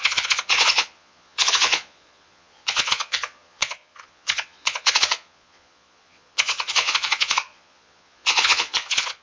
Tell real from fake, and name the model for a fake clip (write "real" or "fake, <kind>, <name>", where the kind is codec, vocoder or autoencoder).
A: fake, vocoder, Vocos